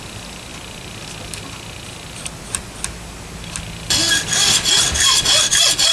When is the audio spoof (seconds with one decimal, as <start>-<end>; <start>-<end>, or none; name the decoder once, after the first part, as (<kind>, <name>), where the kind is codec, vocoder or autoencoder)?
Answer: none